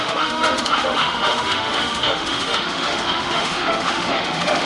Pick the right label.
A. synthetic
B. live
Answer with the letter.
A